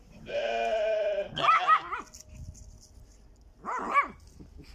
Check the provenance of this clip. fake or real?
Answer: real